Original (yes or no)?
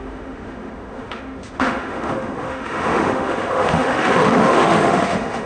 no